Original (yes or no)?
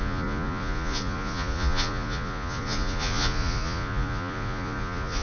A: no